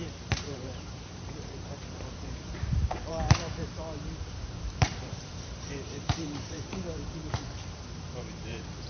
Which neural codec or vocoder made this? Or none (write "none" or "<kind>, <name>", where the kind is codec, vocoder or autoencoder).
vocoder, BigVGAN v2